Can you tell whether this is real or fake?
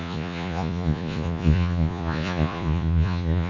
fake